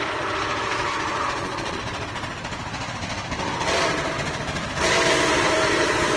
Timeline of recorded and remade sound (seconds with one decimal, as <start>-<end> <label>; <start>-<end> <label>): 0.0-1.1 recorded; 1.1-1.8 remade; 1.8-6.2 recorded